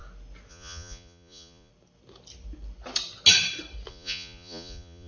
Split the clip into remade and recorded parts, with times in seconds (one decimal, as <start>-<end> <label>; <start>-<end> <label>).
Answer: 0.0-0.5 recorded; 0.5-1.7 remade; 1.7-3.9 recorded; 3.9-5.1 remade